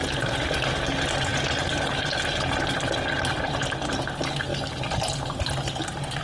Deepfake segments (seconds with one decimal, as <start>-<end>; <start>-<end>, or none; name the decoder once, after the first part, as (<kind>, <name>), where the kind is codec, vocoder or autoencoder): none